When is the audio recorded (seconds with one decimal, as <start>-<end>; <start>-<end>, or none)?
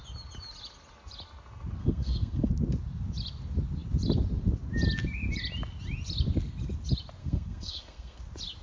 0.0-1.8; 2.5-7.2; 8.2-8.6